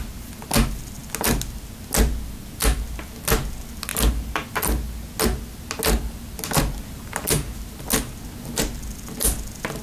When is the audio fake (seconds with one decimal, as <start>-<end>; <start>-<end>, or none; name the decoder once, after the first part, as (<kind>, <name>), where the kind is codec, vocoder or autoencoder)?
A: none